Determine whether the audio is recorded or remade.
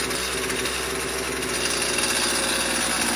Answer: recorded